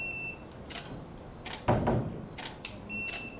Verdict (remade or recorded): recorded